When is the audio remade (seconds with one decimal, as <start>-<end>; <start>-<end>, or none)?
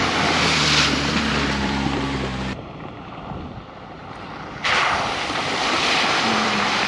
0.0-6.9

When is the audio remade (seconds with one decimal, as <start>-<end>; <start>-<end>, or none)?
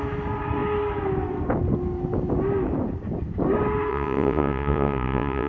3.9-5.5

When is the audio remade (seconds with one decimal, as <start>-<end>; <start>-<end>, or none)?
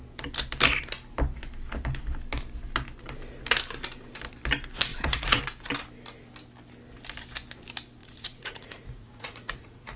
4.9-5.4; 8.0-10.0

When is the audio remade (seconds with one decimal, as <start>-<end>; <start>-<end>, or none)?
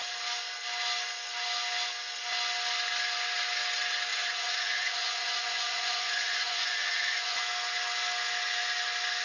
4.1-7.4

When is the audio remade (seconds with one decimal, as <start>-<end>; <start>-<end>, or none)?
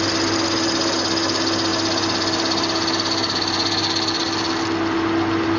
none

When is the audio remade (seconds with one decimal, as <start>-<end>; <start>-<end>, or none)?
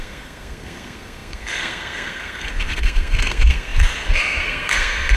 0.0-5.2